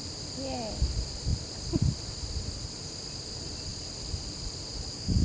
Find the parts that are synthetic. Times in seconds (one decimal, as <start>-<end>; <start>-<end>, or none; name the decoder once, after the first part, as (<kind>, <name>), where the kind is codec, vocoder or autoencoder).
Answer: none